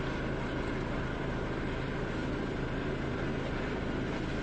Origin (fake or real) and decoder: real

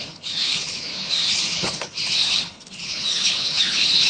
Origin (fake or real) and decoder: fake, codec, HILCodec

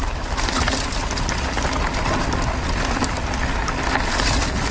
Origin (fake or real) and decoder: real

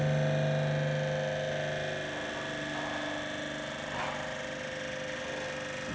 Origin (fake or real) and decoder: real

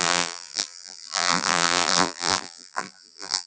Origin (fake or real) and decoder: fake, vocoder, BigVGAN v2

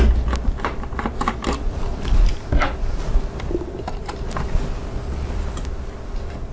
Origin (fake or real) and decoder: real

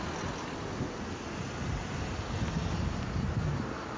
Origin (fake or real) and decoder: real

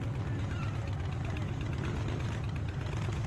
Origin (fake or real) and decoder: real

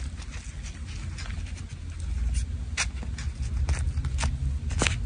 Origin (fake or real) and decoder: real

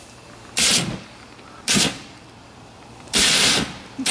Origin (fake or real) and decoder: fake, vocoder, BigVGAN v2